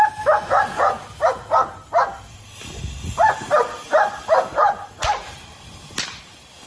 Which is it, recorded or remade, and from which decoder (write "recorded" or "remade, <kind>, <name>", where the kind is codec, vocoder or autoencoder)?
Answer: recorded